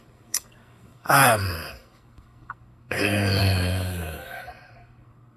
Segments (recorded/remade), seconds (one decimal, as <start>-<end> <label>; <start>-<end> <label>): 0.0-5.4 remade